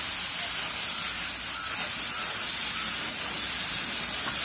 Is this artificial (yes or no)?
no